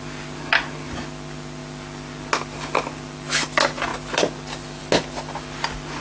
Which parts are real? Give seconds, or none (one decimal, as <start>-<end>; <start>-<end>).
0.0-6.0